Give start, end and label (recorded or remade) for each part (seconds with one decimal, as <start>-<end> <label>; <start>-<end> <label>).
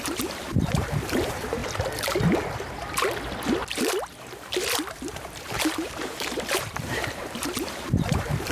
0.0-1.6 remade; 1.6-4.9 recorded; 4.9-8.5 remade